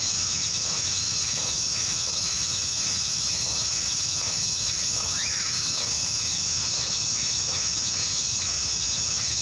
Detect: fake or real fake